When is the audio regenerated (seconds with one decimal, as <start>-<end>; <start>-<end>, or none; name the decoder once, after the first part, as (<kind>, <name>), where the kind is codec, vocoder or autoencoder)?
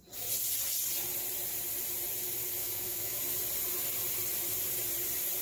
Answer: 2.6-3.2 (autoencoder, DAC-VAE)